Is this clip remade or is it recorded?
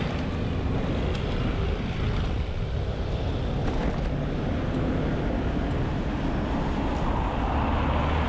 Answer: recorded